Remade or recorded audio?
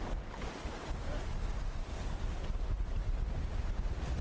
recorded